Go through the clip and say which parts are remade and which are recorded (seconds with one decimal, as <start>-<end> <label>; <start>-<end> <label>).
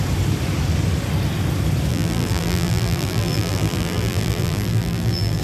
0.0-1.9 recorded; 1.9-5.4 remade